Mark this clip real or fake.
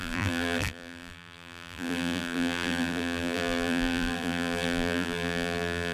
fake